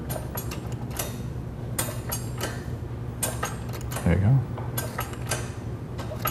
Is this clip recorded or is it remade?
recorded